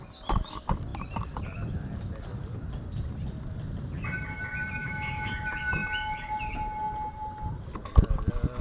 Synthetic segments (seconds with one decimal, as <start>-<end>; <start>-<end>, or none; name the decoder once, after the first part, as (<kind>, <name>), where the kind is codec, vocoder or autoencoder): 4.8-5.3 (autoencoder, DAC-VAE)